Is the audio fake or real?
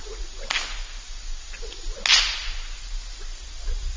real